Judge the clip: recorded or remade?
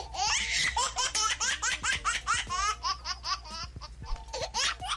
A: remade